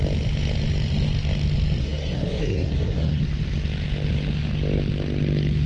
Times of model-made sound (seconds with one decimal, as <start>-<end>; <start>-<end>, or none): 1.8-3.2